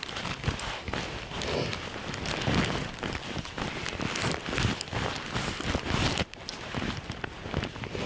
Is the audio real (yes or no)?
yes